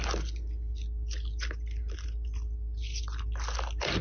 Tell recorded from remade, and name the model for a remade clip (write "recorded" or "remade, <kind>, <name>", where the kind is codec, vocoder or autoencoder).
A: recorded